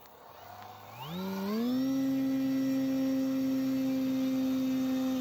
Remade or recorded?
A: recorded